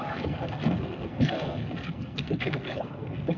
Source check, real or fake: fake